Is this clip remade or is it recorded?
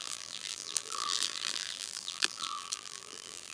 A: remade